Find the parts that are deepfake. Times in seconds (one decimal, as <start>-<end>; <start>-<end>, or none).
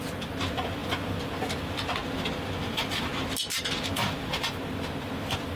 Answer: 0.0-2.0; 2.6-3.1; 5.0-5.6